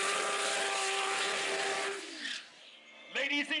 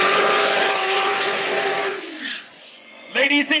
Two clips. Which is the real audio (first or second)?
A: first